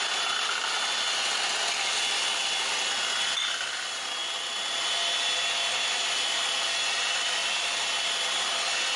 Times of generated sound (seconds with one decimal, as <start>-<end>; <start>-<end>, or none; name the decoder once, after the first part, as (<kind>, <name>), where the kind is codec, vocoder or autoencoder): none